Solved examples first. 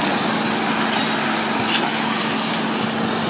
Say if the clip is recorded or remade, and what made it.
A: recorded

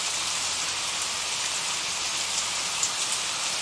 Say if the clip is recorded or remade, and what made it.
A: recorded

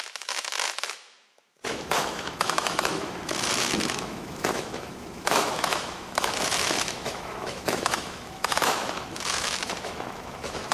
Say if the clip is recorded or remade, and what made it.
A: remade, autoencoder, DAC-VAE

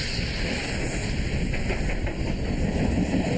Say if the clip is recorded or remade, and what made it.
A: recorded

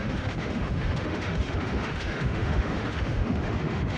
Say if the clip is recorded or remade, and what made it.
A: remade, autoencoder, DAC-VAE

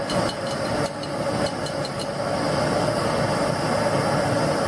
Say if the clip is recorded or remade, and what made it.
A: recorded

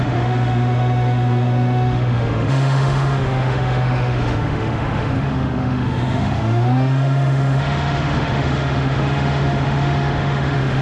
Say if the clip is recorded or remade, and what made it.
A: remade, autoencoder, DAC-VAE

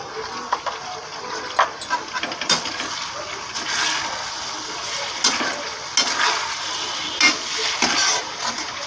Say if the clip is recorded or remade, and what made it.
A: recorded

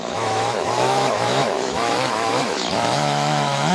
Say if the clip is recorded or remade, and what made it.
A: remade, autoencoder, DAC-VAE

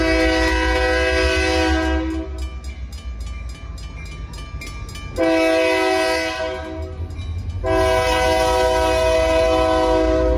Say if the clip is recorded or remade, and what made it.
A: recorded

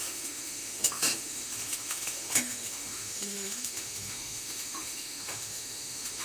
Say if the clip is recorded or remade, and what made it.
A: remade, autoencoder, DAC-VAE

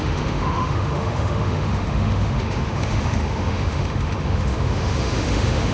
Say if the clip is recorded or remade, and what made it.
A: remade, autoencoder, DAC-VAE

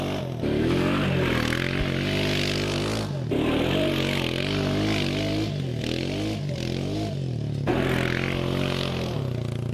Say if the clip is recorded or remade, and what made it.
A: recorded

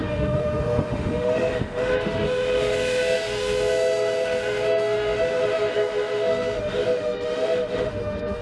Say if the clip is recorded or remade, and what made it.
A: remade, autoencoder, DAC-VAE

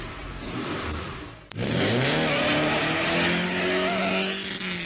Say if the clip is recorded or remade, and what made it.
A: recorded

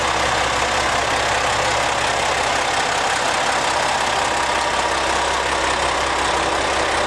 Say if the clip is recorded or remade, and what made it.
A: recorded